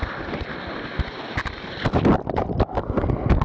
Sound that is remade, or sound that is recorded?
recorded